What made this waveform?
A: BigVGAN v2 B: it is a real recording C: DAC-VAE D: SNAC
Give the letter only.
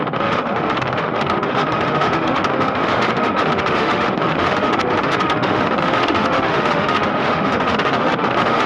C